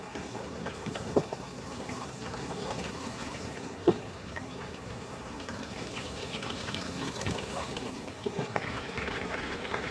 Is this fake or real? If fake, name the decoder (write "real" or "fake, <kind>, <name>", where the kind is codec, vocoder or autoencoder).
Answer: fake, codec, SNAC